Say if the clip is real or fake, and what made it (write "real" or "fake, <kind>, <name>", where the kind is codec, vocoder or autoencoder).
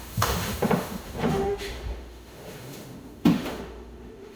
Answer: fake, autoencoder, DAC-VAE